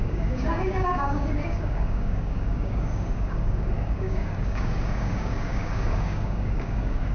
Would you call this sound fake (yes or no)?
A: yes